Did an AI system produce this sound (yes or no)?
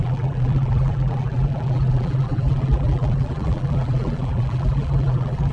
yes